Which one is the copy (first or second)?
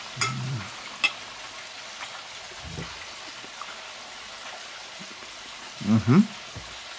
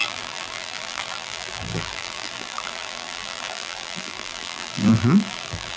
second